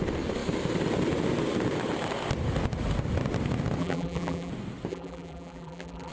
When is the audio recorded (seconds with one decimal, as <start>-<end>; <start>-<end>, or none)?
0.0-3.8; 4.5-4.9